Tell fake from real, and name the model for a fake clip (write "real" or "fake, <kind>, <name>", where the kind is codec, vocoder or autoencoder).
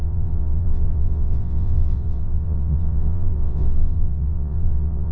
fake, vocoder, WaveNeXt